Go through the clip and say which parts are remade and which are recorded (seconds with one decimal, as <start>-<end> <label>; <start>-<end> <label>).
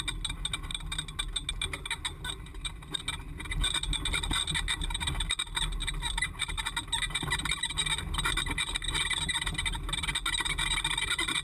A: 0.0-2.5 recorded; 2.5-3.0 remade; 3.0-5.8 recorded; 5.8-6.6 remade; 6.6-11.4 recorded